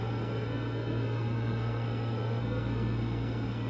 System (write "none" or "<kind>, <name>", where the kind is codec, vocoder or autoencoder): codec, SNAC